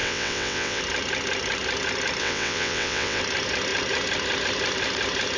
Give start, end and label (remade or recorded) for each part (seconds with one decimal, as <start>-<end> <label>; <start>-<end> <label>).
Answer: 0.0-0.8 remade; 0.8-2.2 recorded; 2.2-3.2 remade; 3.2-5.4 recorded